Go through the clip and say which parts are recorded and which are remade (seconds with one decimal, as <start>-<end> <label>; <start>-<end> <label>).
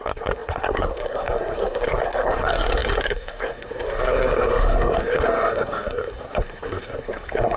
0.0-7.6 remade